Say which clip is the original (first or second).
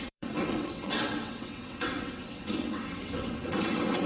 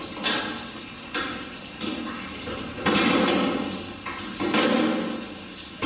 second